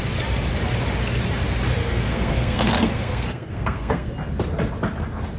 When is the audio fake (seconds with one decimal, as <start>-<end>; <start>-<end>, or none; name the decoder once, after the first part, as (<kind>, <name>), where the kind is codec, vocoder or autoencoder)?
1.8-4.1 (codec, SNAC)